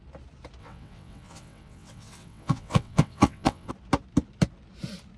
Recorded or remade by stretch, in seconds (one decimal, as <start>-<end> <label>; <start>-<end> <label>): 0.0-0.6 recorded; 0.6-3.7 remade; 3.7-5.2 recorded